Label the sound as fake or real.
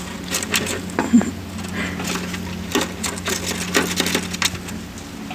real